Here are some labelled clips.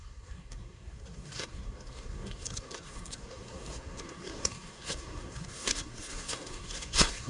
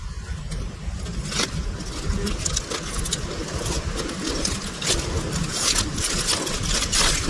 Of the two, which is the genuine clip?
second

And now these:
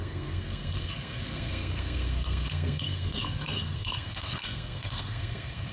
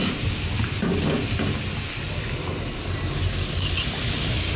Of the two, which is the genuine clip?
second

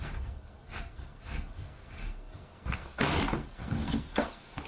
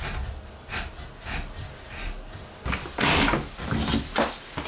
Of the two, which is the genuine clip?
second